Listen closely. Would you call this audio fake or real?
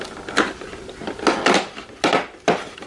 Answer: real